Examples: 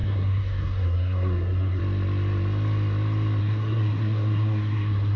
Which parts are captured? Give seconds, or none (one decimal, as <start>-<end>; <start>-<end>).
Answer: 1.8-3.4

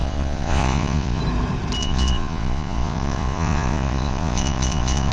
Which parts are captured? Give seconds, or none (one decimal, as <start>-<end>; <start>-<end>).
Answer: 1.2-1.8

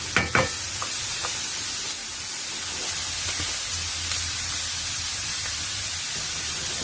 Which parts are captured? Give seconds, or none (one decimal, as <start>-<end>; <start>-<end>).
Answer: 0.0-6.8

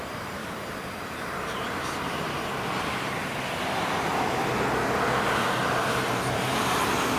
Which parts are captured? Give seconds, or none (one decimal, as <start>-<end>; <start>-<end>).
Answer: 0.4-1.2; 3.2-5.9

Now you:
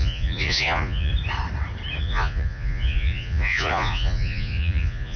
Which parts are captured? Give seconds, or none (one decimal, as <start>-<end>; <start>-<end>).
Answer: 1.1-2.0